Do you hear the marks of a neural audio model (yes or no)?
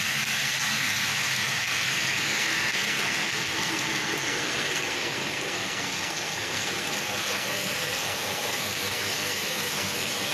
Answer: yes